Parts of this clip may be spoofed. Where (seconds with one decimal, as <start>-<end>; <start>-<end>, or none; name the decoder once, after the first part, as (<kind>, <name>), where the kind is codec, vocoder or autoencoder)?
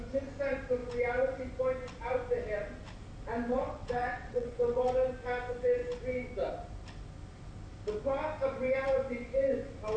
3.5-4.8 (vocoder, WaveNeXt)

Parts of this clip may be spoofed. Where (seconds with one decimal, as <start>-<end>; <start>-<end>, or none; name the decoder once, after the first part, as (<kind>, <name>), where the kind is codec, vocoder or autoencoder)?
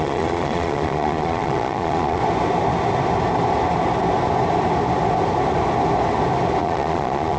0.0-2.2 (vocoder, Vocos); 6.6-7.4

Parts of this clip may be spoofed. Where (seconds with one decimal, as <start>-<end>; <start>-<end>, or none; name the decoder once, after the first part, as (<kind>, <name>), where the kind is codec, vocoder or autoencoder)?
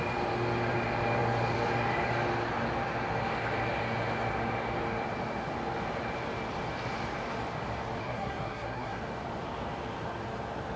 8.0-9.0 (codec, SNAC)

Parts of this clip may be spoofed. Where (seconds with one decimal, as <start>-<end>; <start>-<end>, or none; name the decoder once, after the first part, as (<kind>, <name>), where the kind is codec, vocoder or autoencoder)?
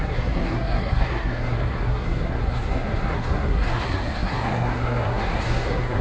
0.0-6.0 (codec, SNAC)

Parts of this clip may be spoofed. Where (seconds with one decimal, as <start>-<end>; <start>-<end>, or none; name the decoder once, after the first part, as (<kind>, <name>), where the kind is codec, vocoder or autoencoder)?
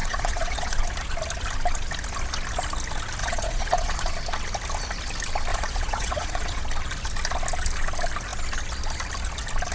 0.0-0.8 (vocoder, Vocos); 3.2-4.1; 5.5-6.6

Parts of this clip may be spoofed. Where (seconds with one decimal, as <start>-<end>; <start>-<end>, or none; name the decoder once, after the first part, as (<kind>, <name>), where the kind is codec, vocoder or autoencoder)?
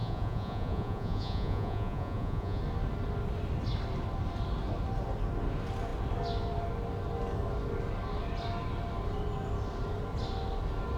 0.0-2.6 (vocoder, Vocos)